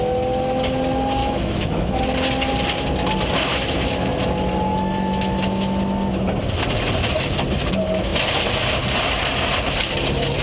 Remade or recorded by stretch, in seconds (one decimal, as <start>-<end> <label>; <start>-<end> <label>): 0.0-1.2 recorded; 1.2-2.0 remade; 2.0-3.5 recorded; 3.5-4.1 remade; 4.1-4.7 recorded; 4.7-5.8 remade; 5.8-10.4 recorded